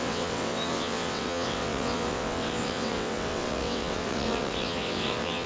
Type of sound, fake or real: fake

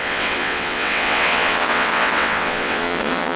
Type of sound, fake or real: fake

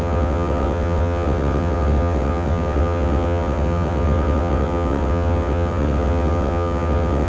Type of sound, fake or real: fake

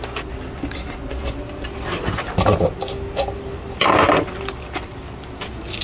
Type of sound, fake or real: real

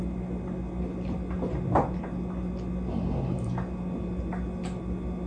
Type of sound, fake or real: real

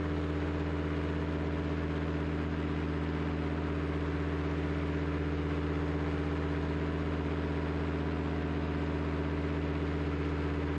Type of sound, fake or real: real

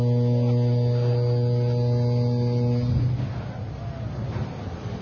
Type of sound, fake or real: real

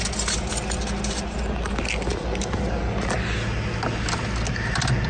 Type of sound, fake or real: real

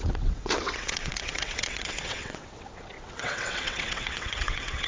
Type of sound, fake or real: fake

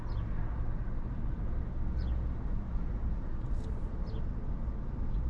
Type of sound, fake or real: real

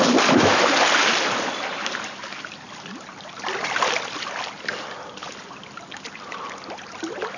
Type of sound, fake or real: real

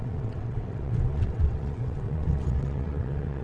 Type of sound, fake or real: fake